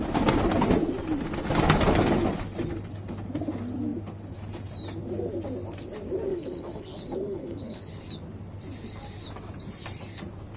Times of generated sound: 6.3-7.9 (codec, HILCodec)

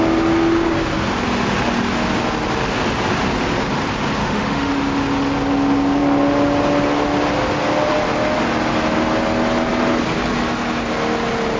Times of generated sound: 4.2-4.7 (autoencoder, DAC-VAE)

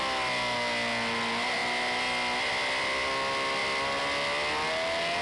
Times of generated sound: none

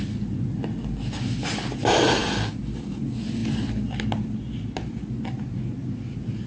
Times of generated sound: none

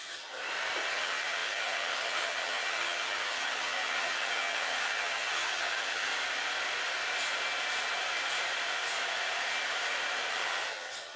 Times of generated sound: 0.0-0.4 (vocoder, HiFi-GAN); 0.9-6.1; 10.3-11.2

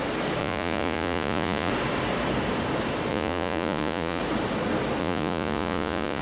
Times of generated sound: 0.4-1.7 (vocoder, Vocos); 3.1-4.2; 5.0-6.2